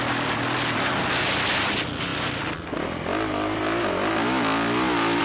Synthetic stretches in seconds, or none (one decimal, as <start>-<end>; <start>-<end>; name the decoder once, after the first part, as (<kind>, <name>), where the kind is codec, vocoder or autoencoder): none